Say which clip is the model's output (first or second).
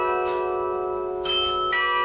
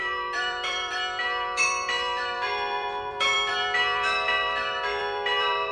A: second